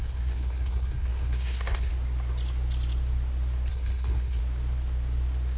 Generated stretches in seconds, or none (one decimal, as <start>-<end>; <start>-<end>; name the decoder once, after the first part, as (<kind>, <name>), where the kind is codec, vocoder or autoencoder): 0.0-1.9 (codec, SNAC); 3.7-4.4